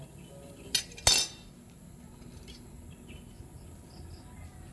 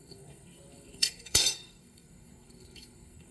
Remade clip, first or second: second